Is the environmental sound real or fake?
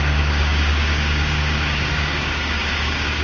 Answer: fake